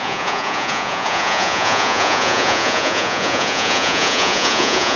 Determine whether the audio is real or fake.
fake